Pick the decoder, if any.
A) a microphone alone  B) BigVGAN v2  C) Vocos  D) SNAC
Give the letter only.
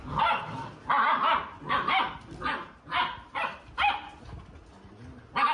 A